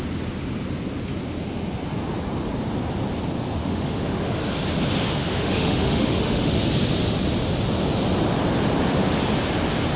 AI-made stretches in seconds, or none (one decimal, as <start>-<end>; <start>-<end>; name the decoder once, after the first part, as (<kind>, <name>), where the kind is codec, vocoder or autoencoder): 3.6-4.3 (autoencoder, DAC-VAE); 5.2-6.5